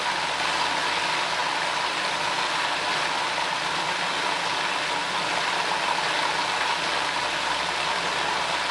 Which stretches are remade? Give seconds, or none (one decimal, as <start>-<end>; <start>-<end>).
none